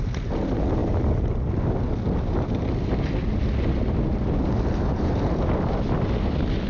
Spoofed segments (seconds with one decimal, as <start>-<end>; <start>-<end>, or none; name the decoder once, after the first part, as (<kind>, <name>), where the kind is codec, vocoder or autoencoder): none